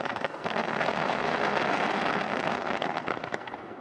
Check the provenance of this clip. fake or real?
fake